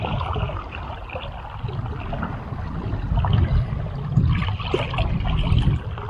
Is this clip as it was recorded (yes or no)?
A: yes